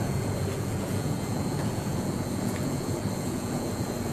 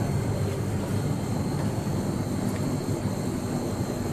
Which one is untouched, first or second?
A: second